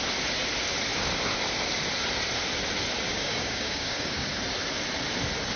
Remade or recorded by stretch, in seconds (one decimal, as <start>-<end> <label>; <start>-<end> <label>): 0.0-3.1 recorded; 3.1-4.3 remade; 4.3-5.6 recorded